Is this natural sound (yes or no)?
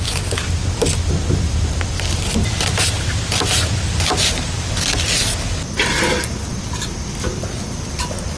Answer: yes